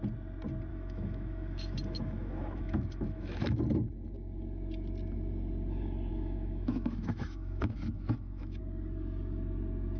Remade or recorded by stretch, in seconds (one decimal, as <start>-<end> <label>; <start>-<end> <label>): 0.0-0.7 recorded; 0.7-3.6 remade; 3.6-6.1 recorded; 6.1-8.6 remade; 8.6-10.0 recorded